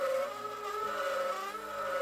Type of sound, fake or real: real